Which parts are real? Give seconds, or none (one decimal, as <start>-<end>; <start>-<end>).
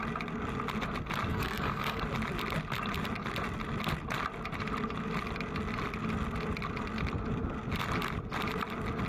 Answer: 0.0-1.3; 2.0-9.1